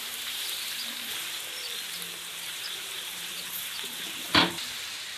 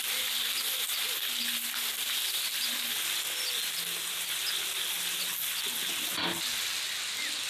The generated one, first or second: first